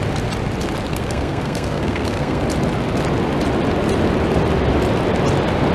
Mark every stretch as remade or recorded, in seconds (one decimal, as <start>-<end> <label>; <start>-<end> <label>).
0.0-0.9 recorded; 0.9-2.4 remade; 2.4-5.7 recorded